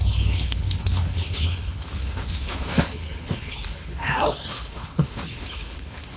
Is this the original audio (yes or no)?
no